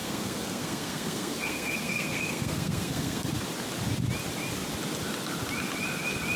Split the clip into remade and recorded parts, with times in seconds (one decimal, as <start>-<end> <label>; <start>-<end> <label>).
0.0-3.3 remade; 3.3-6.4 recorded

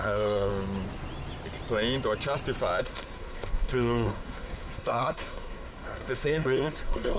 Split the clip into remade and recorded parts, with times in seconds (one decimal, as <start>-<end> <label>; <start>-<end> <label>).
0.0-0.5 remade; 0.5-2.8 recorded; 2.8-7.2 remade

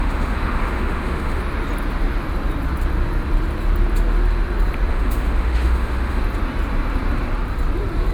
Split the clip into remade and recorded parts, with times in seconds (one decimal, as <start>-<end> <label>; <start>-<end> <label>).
0.0-1.4 remade; 1.4-4.9 recorded; 4.9-6.2 remade; 6.2-8.1 recorded

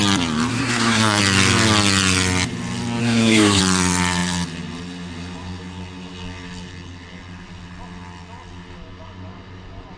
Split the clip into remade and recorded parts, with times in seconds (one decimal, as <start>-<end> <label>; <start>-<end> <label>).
0.0-0.5 recorded; 0.5-1.2 remade; 1.2-3.0 recorded; 3.0-3.6 remade; 3.6-10.0 recorded